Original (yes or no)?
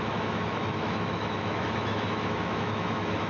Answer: no